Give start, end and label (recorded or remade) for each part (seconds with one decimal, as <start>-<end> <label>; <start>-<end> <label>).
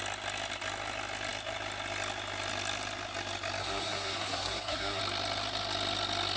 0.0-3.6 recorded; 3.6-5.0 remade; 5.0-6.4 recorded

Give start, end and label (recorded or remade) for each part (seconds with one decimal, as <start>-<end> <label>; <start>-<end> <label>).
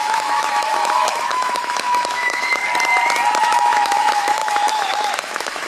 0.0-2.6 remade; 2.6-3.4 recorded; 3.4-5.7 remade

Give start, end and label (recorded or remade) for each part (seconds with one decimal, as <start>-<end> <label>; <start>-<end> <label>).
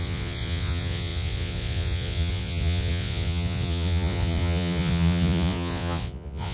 0.0-6.5 remade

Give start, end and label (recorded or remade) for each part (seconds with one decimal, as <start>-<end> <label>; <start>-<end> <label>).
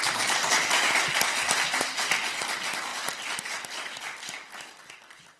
0.0-5.4 recorded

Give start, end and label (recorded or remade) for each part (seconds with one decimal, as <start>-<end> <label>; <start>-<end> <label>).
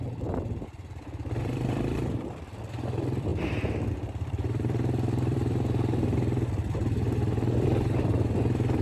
0.0-3.3 remade; 3.3-3.9 recorded; 3.9-8.8 remade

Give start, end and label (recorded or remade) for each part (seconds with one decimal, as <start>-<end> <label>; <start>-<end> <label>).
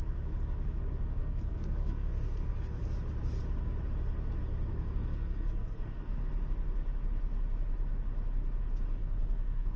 0.0-1.2 recorded; 1.2-2.8 remade; 2.8-4.7 recorded; 4.7-6.3 remade; 6.3-9.0 recorded; 9.0-9.8 remade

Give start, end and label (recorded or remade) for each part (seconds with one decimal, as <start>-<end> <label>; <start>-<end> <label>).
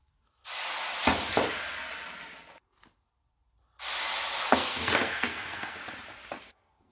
0.0-0.4 remade; 0.4-4.5 recorded; 4.5-5.8 remade; 5.8-6.4 recorded; 6.4-6.9 remade